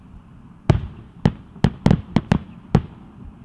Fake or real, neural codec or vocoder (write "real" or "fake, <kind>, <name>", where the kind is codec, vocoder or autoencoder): real